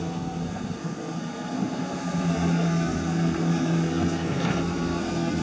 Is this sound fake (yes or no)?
yes